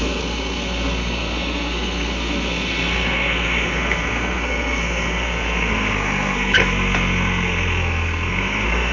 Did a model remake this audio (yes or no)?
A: yes